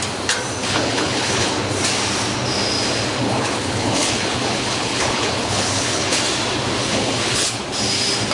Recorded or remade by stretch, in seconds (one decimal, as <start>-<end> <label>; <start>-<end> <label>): 0.0-0.6 recorded; 0.6-1.5 remade; 1.5-3.2 recorded; 3.2-6.2 remade; 6.2-6.8 recorded; 6.8-7.6 remade; 7.6-8.3 recorded